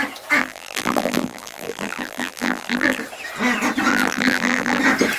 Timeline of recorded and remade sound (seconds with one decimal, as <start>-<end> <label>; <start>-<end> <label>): 0.0-0.4 recorded; 0.4-3.0 remade; 3.0-3.9 recorded; 3.9-4.8 remade; 4.8-5.2 recorded